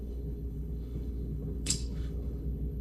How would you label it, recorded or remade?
remade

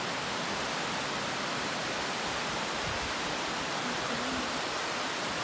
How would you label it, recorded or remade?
recorded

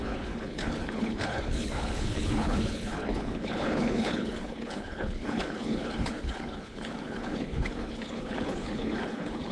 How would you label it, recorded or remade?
remade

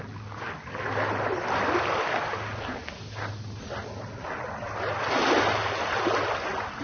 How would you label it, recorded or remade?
recorded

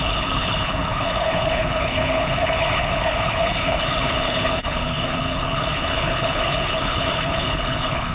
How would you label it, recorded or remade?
remade